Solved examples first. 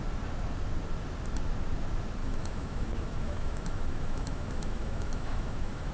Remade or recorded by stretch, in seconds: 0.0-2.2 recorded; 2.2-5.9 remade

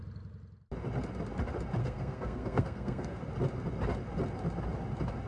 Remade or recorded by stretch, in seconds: 0.0-1.8 recorded; 1.8-3.2 remade; 3.2-5.3 recorded

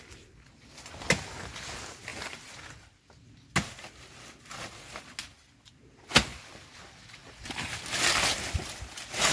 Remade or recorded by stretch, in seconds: 0.0-7.2 recorded; 7.2-7.7 remade; 7.7-9.3 recorded